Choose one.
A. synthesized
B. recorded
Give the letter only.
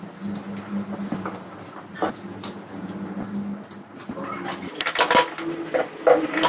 B